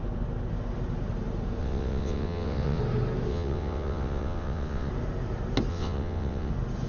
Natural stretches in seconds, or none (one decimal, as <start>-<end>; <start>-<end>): 0.0-1.6; 2.8-3.3; 4.9-5.7; 6.5-6.9